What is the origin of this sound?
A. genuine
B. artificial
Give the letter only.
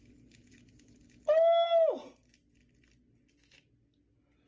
A